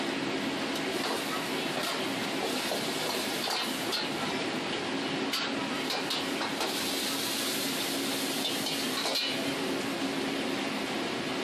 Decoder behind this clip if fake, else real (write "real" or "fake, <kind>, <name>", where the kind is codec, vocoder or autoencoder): real